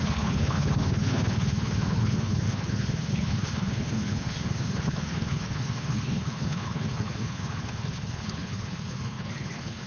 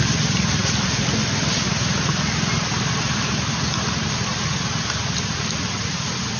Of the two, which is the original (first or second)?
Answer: second